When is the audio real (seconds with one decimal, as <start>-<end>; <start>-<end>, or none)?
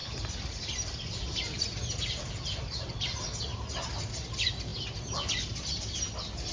0.0-6.5